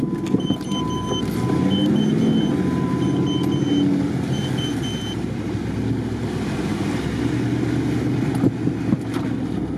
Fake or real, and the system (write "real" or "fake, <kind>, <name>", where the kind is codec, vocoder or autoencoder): real